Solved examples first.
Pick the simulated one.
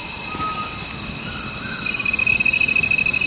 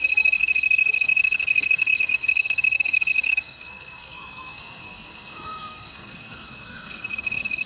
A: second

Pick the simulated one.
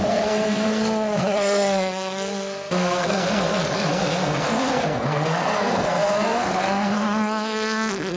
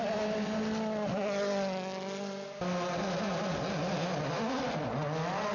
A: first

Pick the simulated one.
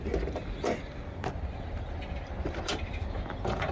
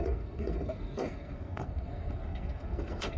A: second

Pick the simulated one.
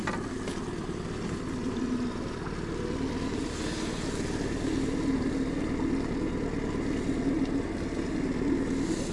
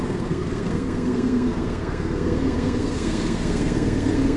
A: second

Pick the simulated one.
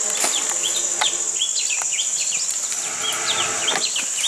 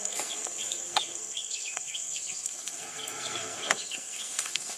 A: second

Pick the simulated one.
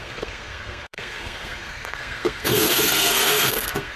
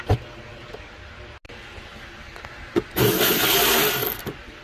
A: first